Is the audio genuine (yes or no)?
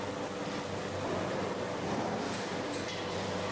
yes